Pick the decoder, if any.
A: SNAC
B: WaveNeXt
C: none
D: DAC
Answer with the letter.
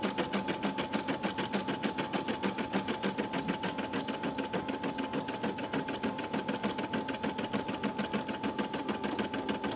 C